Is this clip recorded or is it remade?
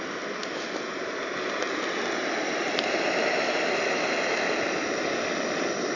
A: recorded